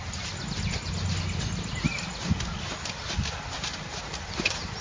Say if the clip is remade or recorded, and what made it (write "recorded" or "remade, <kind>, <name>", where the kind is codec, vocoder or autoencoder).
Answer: recorded